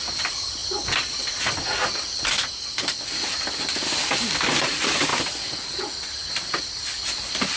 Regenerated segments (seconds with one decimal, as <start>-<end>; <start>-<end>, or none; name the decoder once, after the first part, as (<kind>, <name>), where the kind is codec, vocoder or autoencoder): 0.0-5.1 (vocoder, BigVGAN v2); 6.3-7.6